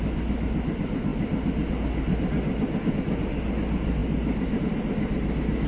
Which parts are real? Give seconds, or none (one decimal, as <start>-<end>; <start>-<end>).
0.0-5.7